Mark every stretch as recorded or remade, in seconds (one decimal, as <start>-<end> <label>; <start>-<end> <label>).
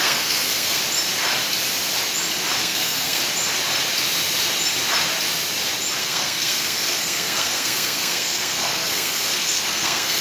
0.0-0.8 remade; 0.8-2.6 recorded; 2.6-3.2 remade; 3.2-6.0 recorded; 6.0-10.2 remade